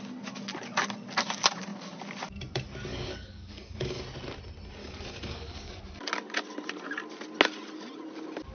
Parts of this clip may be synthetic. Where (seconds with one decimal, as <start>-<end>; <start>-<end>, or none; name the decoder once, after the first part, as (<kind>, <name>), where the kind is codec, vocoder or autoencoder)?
2.9-4.0 (codec, DAC); 4.8-5.7